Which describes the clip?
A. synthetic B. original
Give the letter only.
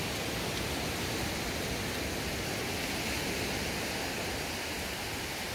B